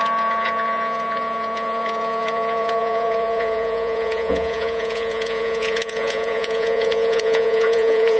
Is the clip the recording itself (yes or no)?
no